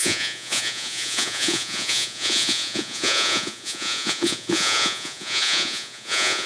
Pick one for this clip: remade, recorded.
remade